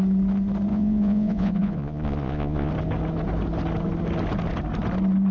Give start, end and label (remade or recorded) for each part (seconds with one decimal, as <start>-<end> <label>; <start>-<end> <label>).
0.0-0.7 recorded; 0.7-2.7 remade; 2.7-5.3 recorded